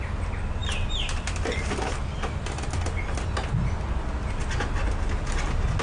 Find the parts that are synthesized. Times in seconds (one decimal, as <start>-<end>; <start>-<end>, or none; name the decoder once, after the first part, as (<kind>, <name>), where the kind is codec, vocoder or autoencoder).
0.6-3.2 (vocoder, BigVGAN v2)